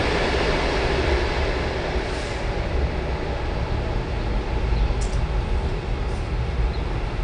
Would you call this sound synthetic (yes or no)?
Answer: no